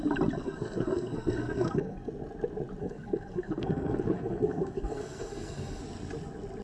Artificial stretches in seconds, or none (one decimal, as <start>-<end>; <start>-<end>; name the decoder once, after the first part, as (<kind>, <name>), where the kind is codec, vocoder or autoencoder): 0.4-2.1 (codec, SNAC); 2.8-5.8